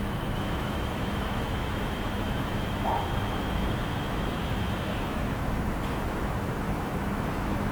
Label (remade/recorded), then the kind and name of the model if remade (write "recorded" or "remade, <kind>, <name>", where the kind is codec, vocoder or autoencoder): remade, autoencoder, DAC-VAE